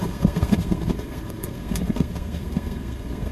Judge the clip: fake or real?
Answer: fake